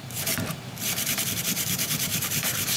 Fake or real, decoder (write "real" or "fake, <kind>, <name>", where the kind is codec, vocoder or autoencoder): fake, vocoder, BigVGAN v2